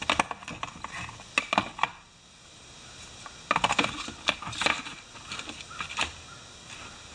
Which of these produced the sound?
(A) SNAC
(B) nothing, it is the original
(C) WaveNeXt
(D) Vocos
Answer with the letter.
B